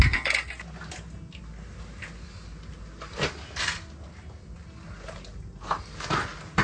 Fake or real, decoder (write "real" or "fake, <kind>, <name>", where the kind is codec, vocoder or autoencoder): real